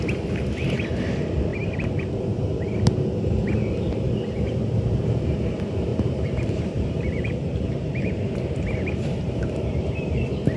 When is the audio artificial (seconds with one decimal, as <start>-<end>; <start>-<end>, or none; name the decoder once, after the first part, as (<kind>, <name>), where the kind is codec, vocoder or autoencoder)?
1.5-2.4 (vocoder, BigVGAN v2); 5.9-10.1